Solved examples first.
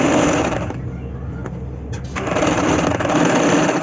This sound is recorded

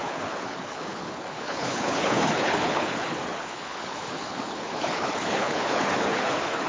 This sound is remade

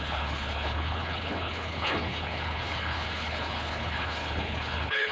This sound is remade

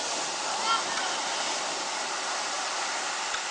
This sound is recorded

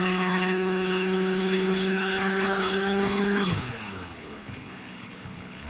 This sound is remade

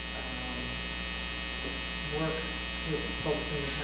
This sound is recorded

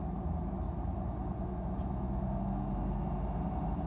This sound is recorded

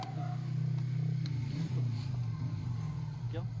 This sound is recorded